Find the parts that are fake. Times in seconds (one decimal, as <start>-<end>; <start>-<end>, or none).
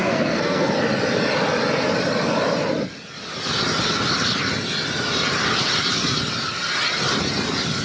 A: 0.0-0.7